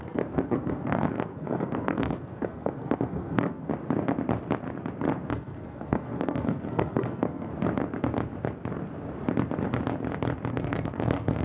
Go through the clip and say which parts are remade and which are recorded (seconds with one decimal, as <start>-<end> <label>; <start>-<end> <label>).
0.0-3.7 remade; 3.7-5.3 recorded; 5.3-7.5 remade; 7.5-10.5 recorded; 10.5-11.4 remade